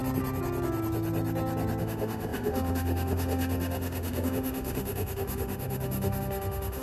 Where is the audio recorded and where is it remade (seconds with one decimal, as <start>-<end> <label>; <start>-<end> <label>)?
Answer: 0.0-1.8 recorded; 1.8-6.8 remade